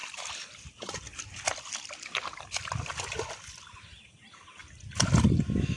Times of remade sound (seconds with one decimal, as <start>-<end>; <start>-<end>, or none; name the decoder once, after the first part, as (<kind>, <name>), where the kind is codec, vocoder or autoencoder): none